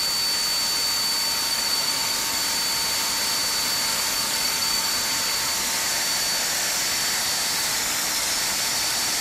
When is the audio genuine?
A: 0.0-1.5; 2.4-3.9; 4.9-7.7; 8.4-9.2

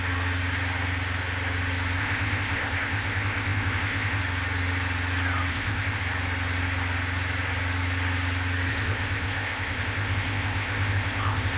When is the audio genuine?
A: 0.0-2.0; 4.2-5.5; 6.0-8.7